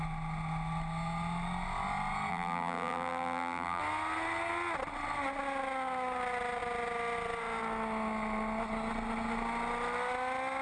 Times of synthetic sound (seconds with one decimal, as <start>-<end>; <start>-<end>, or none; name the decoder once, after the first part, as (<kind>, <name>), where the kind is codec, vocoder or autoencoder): 2.3-3.8 (vocoder, BigVGAN v2)